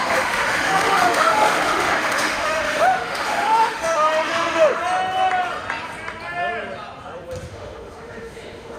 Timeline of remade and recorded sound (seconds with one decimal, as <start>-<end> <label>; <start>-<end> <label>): 0.0-4.8 remade; 4.8-7.5 recorded; 7.5-8.8 remade